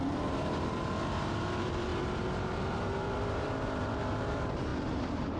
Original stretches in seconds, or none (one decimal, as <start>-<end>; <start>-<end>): none